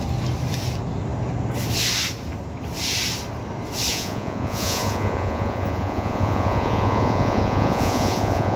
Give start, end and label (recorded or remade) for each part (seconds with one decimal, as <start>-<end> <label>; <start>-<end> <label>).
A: 0.0-3.9 recorded; 3.9-8.6 remade